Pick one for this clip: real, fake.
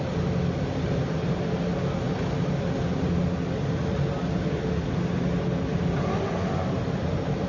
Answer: real